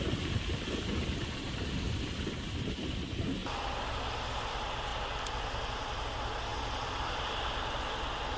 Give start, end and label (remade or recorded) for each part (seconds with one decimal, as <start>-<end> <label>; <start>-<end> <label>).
0.0-3.4 recorded; 3.4-4.0 remade; 4.0-6.5 recorded; 6.5-7.6 remade; 7.6-8.4 recorded